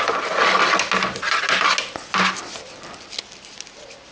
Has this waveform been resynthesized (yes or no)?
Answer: no